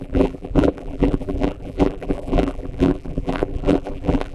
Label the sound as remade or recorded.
remade